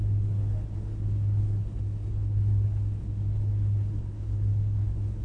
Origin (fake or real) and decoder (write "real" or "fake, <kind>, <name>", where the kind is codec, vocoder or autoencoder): fake, codec, HILCodec